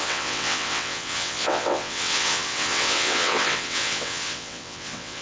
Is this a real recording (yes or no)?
no